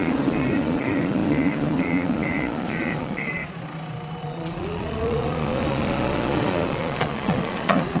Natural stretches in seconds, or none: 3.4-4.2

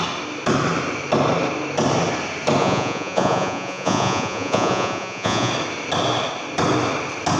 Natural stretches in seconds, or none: 0.0-2.6; 5.5-7.4